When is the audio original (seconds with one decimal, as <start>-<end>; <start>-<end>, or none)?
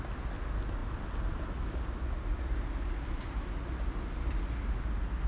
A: 0.0-5.3